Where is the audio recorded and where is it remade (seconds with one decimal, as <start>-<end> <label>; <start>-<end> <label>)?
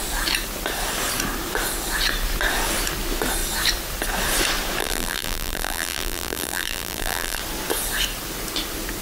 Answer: 0.0-4.8 recorded; 4.8-7.4 remade; 7.4-9.0 recorded